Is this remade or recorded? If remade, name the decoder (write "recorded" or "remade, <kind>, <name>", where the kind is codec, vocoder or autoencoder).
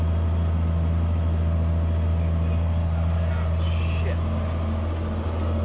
recorded